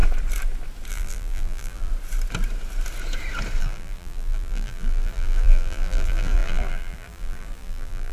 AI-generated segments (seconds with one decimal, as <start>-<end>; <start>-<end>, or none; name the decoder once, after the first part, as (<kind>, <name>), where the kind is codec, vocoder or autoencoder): 0.9-1.9 (vocoder, BigVGAN v2); 3.6-8.1